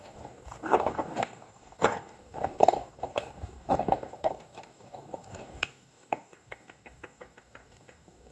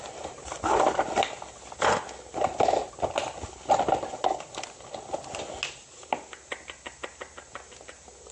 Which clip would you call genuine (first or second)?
second